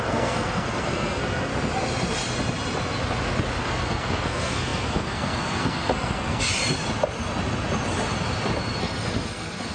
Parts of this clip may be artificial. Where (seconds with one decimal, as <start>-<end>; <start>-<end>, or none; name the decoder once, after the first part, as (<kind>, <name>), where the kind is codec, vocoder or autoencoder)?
0.0-1.5 (codec, SNAC); 3.6-6.5; 8.8-9.7